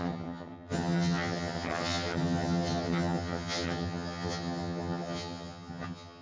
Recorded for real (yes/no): no